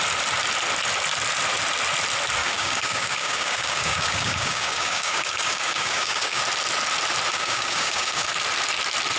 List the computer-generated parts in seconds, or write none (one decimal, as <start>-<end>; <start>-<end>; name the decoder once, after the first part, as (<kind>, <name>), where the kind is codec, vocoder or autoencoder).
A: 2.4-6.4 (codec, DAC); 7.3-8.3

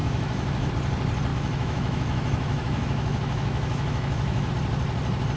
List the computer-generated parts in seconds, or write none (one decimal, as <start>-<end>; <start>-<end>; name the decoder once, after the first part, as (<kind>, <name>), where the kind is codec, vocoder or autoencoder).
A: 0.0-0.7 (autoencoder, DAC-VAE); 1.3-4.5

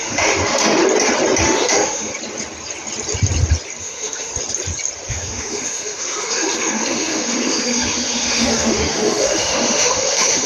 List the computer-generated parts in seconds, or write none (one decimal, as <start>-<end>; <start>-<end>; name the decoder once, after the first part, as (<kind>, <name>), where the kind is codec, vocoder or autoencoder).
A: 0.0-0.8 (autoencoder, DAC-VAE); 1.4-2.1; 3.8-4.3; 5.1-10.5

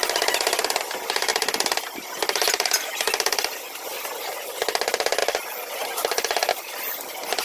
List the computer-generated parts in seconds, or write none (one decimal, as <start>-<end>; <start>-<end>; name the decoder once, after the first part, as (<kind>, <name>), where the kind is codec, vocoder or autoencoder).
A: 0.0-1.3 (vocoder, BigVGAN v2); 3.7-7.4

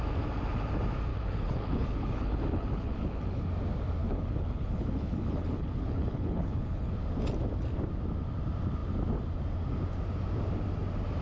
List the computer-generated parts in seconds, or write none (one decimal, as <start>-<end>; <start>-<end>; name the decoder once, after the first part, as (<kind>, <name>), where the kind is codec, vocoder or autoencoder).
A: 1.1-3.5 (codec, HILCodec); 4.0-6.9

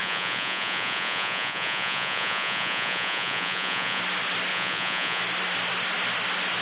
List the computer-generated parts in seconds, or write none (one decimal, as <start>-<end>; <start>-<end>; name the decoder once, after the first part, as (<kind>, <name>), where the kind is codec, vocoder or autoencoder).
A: 0.0-4.0 (vocoder, Vocos); 4.5-5.2